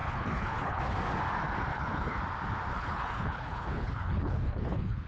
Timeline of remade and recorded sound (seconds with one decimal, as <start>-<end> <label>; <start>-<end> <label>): 0.0-0.8 remade; 0.8-1.7 recorded; 1.7-2.2 remade; 2.2-2.7 recorded; 2.7-5.1 remade